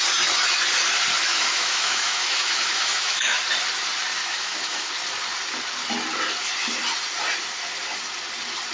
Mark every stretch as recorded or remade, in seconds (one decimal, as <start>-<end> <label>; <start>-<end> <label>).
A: 0.0-1.3 recorded; 1.3-3.4 remade; 3.4-4.2 recorded; 4.2-4.9 remade; 4.9-8.7 recorded